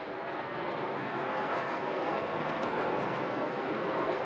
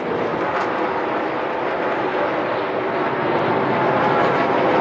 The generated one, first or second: first